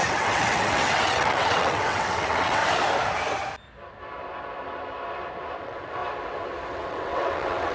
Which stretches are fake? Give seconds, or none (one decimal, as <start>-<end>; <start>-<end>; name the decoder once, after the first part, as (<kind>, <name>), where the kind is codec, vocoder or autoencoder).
0.0-2.6 (vocoder, WaveNeXt); 5.6-6.0; 6.7-7.7